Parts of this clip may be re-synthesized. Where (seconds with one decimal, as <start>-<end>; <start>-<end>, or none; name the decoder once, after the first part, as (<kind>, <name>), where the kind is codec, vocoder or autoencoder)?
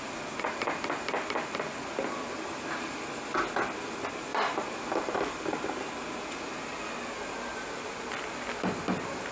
4.3-5.9 (vocoder, BigVGAN v2)